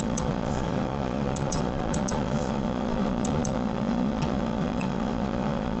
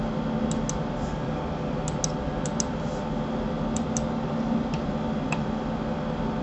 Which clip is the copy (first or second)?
first